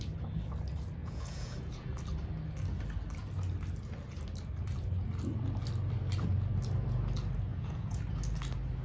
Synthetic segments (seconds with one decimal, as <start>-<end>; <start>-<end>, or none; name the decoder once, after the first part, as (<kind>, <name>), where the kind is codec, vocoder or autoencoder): 1.0-1.9 (vocoder, Vocos); 7.5-8.0